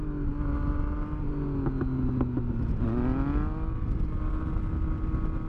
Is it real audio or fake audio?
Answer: real